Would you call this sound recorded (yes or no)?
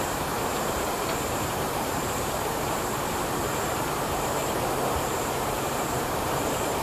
no